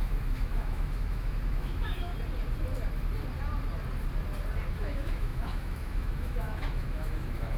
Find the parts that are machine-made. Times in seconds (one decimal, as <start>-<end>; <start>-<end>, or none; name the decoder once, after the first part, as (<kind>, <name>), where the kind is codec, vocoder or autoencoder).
0.0-2.1 (autoencoder, DAC-VAE); 4.7-7.6